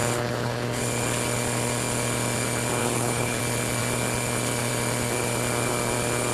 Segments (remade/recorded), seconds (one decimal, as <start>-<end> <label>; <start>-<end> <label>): 0.0-0.8 remade; 0.8-2.8 recorded; 2.8-3.4 remade; 3.4-6.3 recorded